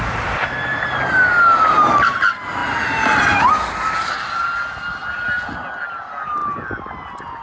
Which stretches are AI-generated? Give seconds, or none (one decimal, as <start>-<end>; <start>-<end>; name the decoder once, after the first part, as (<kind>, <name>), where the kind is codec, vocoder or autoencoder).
none